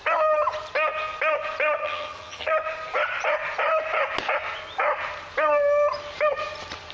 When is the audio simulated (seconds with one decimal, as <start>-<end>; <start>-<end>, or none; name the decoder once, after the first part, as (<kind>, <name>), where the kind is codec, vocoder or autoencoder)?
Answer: 1.8-2.5 (vocoder, HiFi-GAN)